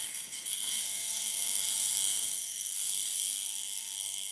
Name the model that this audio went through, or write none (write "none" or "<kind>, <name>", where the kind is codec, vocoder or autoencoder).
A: codec, SNAC